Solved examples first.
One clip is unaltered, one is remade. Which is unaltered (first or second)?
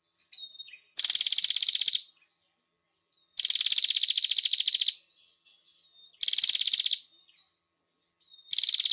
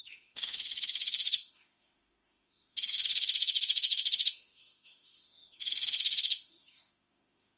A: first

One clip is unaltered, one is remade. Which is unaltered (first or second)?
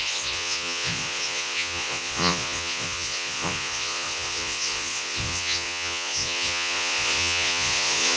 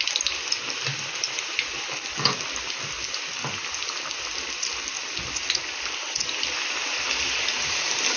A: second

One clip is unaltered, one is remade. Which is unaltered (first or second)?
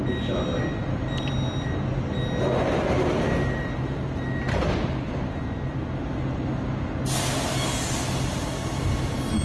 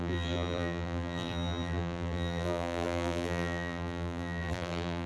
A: first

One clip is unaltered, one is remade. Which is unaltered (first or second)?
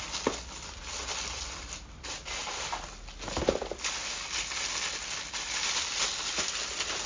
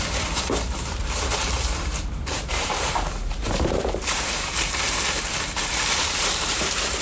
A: first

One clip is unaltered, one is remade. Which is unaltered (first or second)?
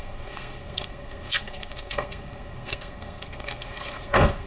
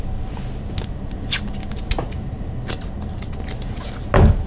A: second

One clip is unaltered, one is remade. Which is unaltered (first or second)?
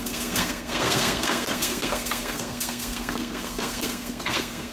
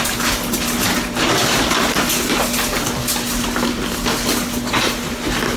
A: second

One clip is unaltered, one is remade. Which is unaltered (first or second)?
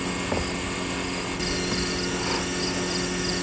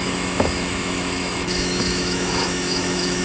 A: first